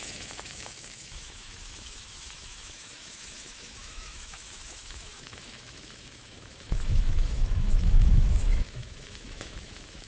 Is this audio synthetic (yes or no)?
yes